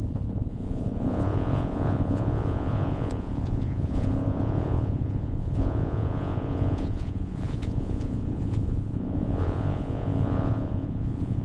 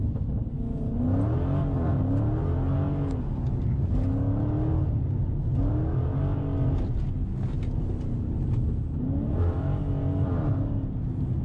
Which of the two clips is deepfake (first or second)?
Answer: first